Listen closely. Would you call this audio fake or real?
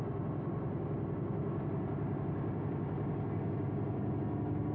real